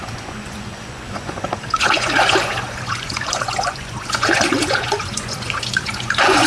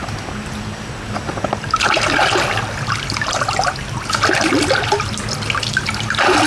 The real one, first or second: second